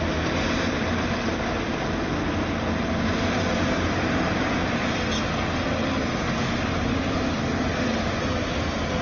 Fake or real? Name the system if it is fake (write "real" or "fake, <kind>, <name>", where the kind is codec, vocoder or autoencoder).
real